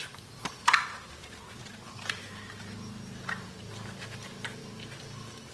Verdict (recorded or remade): recorded